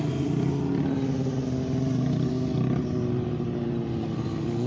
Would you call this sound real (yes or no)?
yes